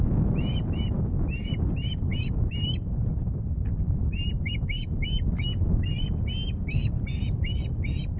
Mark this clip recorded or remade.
recorded